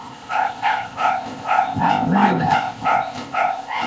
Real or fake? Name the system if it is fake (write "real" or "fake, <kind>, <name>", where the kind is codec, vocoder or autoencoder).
fake, codec, ZipCodec